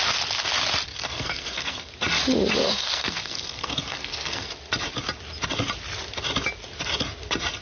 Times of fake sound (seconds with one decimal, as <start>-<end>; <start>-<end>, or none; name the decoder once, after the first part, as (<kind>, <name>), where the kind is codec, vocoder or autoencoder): 0.9-1.9 (codec, SNAC); 2.6-4.5